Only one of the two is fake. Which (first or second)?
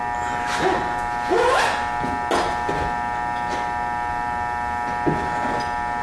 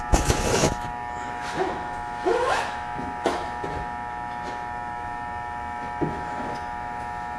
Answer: second